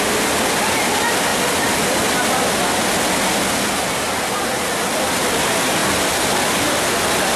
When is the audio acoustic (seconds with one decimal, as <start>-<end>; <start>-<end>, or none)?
0.0-7.4